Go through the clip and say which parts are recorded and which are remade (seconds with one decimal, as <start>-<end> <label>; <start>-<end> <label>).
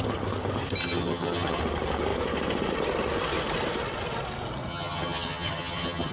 0.0-0.8 recorded; 0.8-1.6 remade; 1.6-4.7 recorded; 4.7-6.1 remade